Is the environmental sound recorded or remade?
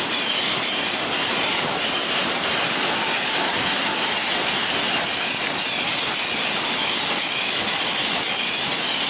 recorded